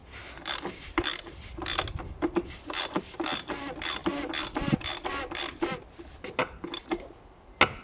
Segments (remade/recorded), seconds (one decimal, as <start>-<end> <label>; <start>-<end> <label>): 0.0-7.8 recorded